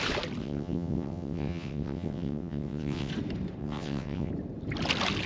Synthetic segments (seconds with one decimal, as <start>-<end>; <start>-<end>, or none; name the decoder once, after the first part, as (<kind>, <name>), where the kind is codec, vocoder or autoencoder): 0.4-3.1 (vocoder, WaveNeXt); 3.6-4.3